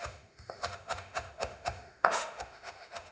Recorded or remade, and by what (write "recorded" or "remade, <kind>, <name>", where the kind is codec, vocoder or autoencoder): remade, autoencoder, DAC-VAE